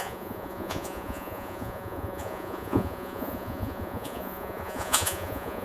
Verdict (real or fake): fake